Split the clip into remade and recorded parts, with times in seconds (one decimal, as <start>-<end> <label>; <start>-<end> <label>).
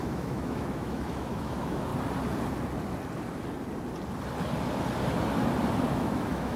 0.0-1.9 remade; 1.9-5.9 recorded; 5.9-6.6 remade